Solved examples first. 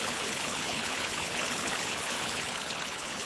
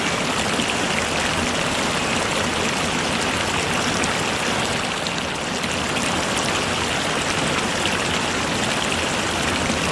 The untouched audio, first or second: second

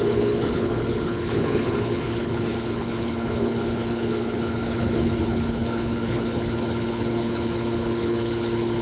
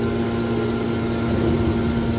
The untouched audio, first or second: second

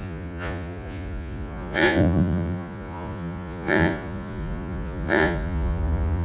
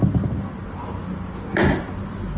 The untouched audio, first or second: second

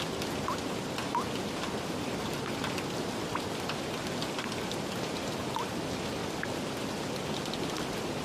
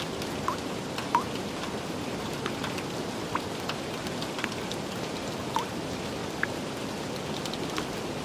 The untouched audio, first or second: first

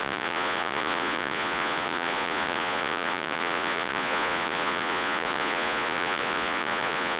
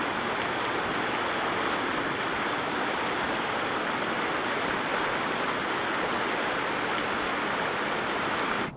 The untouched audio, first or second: second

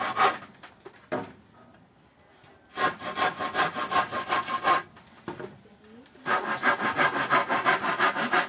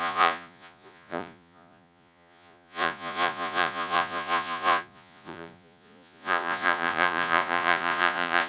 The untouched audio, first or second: first